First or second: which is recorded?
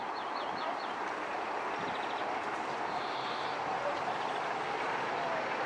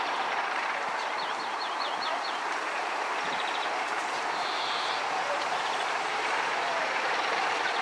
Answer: first